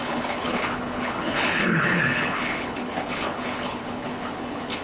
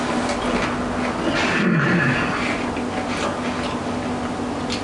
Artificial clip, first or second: first